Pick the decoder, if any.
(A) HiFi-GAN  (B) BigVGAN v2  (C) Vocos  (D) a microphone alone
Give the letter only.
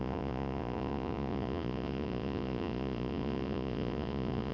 C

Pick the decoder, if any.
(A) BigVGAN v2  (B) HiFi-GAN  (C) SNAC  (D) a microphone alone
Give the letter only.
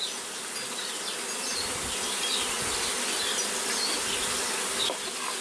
D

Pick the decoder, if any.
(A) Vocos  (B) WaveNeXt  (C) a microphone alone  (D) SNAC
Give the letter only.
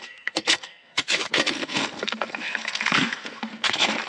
D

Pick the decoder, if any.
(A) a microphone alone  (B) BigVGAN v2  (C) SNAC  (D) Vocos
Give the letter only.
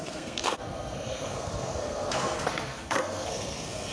C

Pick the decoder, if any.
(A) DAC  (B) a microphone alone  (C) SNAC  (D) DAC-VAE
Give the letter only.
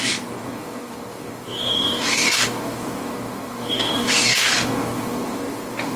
A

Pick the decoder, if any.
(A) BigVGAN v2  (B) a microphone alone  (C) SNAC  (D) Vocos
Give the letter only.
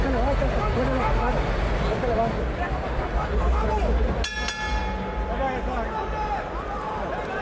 B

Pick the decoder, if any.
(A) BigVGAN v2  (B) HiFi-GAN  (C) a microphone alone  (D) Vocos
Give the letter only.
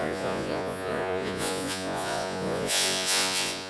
D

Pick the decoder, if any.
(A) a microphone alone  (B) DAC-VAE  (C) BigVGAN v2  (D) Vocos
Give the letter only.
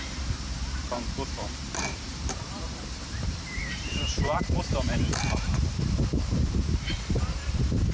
C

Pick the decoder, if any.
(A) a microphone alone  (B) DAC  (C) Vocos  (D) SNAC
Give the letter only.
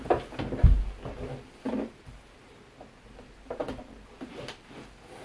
A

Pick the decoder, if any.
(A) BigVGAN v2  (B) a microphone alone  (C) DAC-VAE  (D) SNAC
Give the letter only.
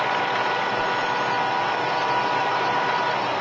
B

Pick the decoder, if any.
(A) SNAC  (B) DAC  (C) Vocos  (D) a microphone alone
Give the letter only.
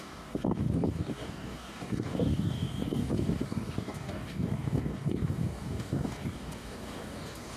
B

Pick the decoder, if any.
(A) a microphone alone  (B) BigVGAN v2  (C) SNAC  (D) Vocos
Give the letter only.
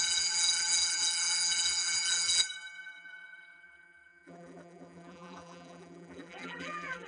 B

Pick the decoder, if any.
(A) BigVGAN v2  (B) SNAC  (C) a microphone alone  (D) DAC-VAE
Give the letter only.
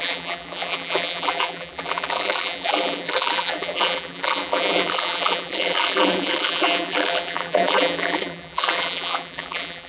A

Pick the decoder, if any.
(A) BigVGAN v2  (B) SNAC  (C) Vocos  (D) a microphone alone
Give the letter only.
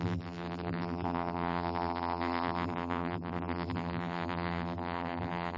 A